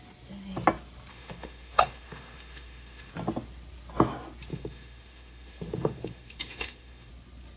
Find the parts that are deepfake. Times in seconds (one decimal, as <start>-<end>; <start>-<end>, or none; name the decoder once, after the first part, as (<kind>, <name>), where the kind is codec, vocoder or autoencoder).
1.1-3.1 (autoencoder, DAC-VAE); 4.5-7.1